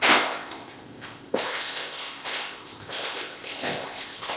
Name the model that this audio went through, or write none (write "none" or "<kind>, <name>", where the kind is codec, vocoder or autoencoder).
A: codec, ZipCodec